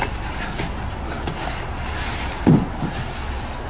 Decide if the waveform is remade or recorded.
recorded